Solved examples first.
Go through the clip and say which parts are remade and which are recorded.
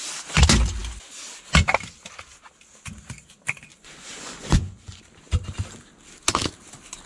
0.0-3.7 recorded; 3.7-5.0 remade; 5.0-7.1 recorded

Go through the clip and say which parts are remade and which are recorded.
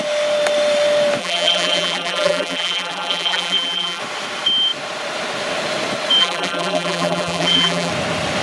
0.0-1.2 recorded; 1.2-4.0 remade; 4.0-6.2 recorded; 6.2-7.9 remade; 7.9-8.4 recorded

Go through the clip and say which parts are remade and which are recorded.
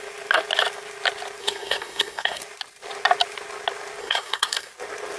0.0-1.4 recorded; 1.4-2.4 remade; 2.4-4.0 recorded; 4.0-4.7 remade; 4.7-5.2 recorded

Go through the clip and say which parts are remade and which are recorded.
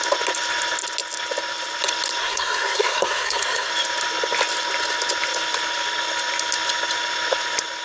0.0-2.2 recorded; 2.2-3.7 remade; 3.7-7.8 recorded